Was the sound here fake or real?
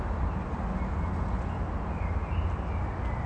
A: real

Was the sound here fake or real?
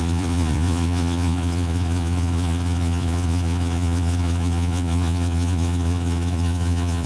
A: fake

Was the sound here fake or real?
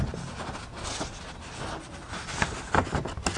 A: real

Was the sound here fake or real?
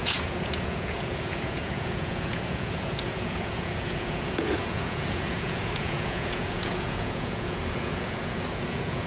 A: fake